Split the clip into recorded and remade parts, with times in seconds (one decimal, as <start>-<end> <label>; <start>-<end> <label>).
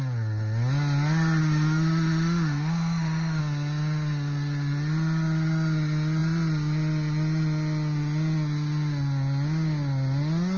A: 0.0-1.4 recorded; 1.4-3.4 remade; 3.4-10.6 recorded